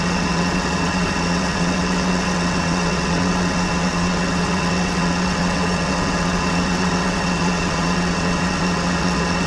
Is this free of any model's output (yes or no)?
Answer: no